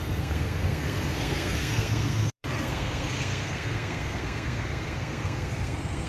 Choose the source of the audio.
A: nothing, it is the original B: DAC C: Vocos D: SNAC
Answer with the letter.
D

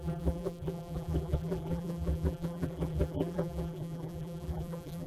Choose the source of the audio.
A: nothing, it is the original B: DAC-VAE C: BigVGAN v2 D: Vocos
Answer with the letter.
C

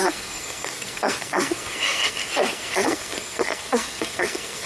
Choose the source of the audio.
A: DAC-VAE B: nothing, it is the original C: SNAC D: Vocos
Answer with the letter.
C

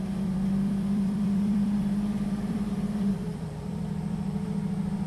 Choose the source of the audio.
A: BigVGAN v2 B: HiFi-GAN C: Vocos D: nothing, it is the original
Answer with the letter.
A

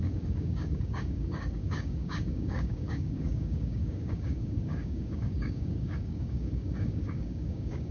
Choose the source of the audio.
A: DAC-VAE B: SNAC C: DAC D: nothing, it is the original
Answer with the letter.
C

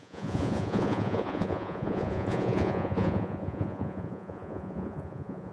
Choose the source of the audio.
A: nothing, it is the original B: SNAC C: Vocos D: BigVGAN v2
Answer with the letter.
C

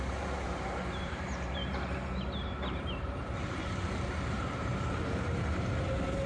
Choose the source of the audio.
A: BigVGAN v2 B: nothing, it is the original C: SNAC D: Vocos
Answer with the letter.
A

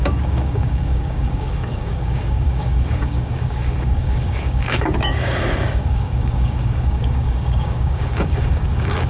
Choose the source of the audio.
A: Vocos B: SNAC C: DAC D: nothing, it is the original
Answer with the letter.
C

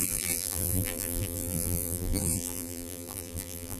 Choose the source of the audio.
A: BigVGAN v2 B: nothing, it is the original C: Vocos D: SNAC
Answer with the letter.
A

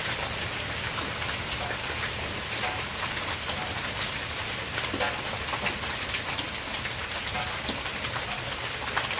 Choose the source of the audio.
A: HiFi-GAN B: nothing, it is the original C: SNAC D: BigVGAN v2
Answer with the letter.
B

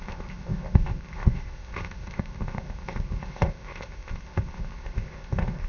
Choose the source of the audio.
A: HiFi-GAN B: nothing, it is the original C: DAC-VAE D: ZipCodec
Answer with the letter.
D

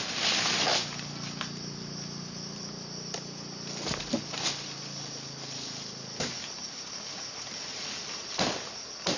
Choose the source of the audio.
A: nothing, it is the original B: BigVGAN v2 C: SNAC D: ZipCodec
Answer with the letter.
A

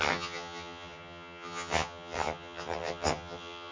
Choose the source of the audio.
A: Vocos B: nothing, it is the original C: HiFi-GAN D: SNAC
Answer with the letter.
C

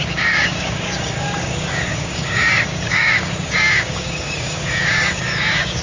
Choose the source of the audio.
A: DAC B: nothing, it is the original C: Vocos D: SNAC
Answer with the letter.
A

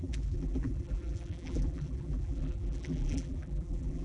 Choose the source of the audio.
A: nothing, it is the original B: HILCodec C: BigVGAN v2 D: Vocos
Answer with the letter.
C